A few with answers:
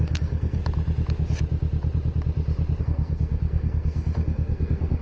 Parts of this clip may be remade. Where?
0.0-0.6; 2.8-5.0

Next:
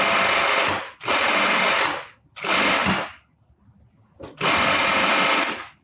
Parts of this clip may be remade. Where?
none

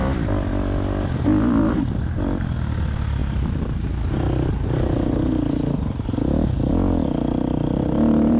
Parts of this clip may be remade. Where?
none

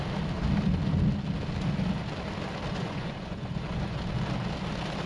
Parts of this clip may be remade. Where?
2.7-4.0

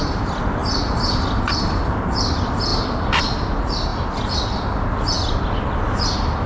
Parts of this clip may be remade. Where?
2.7-3.2